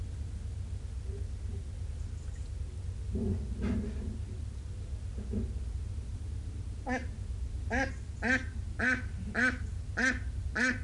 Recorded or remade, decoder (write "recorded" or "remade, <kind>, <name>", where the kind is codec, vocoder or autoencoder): recorded